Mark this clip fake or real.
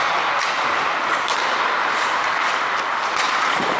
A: real